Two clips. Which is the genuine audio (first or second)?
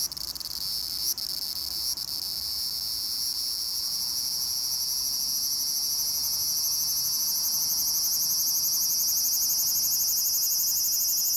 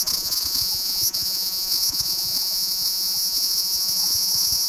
first